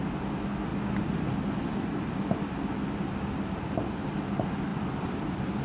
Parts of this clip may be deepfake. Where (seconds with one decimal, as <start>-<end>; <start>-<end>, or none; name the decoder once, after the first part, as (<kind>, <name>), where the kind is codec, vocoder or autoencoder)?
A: 4.7-5.6 (vocoder, BigVGAN v2)